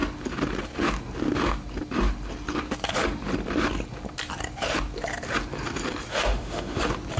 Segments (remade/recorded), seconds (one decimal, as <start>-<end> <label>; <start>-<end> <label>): 0.0-6.1 recorded; 6.1-6.8 remade; 6.8-7.2 recorded